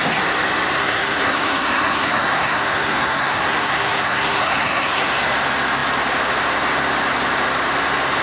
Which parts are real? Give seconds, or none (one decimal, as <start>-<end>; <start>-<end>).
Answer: 0.0-0.8; 5.1-8.2

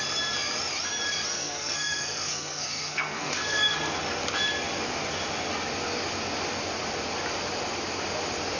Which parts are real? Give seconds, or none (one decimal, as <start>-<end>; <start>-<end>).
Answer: 0.0-1.3; 3.8-8.6

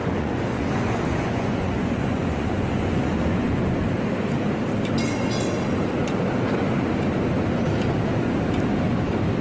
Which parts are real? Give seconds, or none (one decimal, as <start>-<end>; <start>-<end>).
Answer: 3.6-9.4

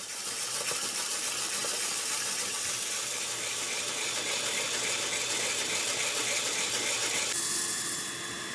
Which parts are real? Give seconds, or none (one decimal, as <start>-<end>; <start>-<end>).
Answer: 0.0-8.5

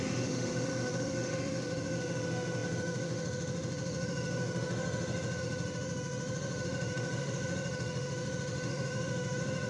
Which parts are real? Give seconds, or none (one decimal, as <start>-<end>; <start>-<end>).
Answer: none